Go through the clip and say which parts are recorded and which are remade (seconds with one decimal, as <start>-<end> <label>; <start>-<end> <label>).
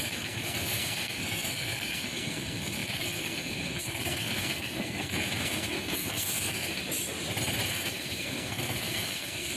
0.0-6.7 remade; 6.7-7.7 recorded; 7.7-9.6 remade